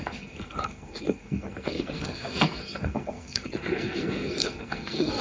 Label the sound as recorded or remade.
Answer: remade